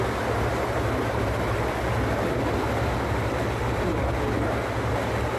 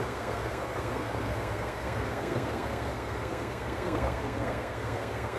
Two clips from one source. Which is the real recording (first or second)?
first